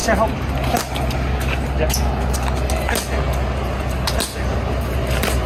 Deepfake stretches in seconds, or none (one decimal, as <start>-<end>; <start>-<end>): none